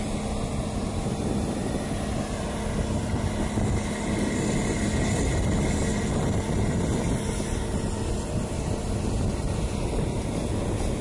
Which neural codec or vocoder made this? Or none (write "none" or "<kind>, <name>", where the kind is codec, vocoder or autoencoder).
none